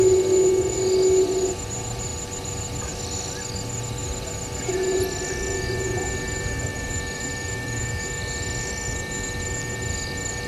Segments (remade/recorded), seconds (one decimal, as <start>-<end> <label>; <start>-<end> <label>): 0.0-6.7 recorded; 6.7-8.0 remade; 8.0-10.5 recorded